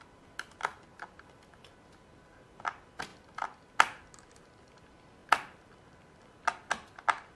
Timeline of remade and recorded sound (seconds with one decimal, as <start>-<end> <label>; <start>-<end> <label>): 0.0-0.7 recorded; 0.7-1.7 remade; 1.7-3.1 recorded; 3.1-3.7 remade; 3.7-7.4 recorded